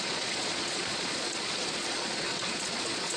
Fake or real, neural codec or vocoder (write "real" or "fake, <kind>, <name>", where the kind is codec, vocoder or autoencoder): fake, vocoder, Vocos